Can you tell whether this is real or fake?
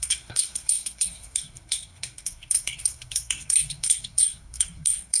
fake